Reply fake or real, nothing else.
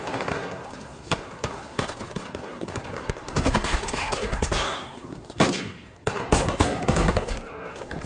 fake